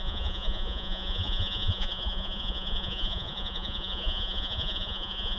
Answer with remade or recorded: remade